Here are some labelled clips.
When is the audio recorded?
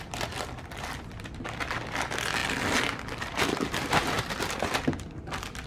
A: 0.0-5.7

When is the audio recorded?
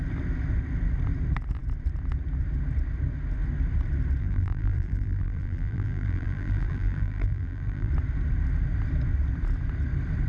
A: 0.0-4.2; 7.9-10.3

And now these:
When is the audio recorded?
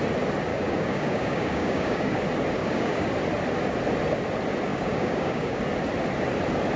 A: 0.0-0.5; 2.2-2.6; 3.1-4.7; 5.6-6.8